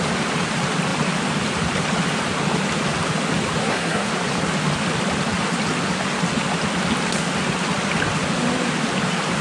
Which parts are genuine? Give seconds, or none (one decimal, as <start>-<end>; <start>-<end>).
0.0-3.6; 4.1-9.4